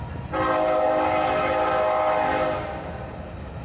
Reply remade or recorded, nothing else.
recorded